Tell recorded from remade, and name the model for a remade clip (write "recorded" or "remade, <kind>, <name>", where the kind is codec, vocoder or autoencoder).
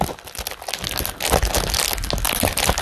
recorded